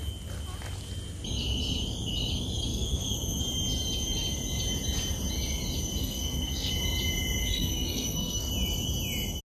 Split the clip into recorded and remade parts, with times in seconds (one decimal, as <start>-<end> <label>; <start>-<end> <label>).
0.0-2.7 recorded; 2.7-3.4 remade; 3.4-6.0 recorded; 6.0-6.7 remade; 6.7-7.4 recorded; 7.4-8.5 remade; 8.5-9.6 recorded